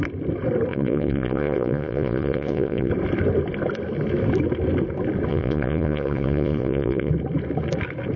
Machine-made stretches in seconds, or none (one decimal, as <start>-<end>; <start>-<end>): 0.7-2.9; 5.3-7.1